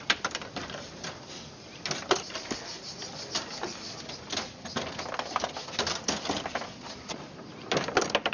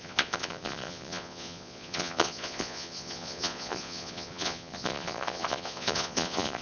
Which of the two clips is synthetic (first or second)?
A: second